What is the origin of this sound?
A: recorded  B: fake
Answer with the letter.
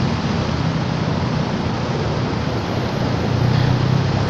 A